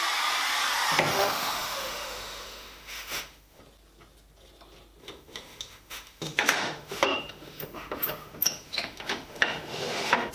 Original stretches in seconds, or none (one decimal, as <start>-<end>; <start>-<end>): 0.0-1.1; 3.6-5.0